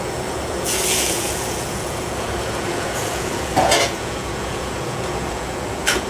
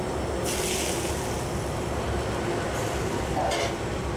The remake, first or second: first